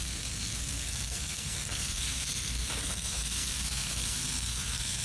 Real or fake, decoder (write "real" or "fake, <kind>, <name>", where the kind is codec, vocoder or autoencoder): fake, codec, SNAC